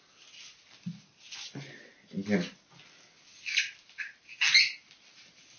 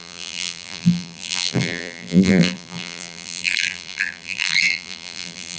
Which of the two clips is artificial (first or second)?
second